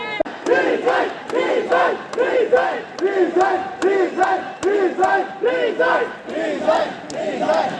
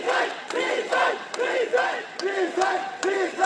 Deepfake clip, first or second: second